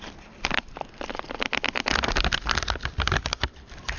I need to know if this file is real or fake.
fake